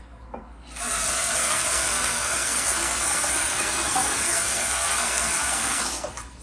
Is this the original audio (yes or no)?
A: no